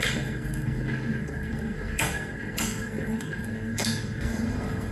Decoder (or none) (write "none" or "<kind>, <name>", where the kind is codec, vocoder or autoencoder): codec, SNAC